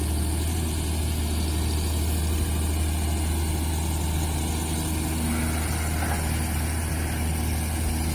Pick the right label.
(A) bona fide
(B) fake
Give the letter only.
A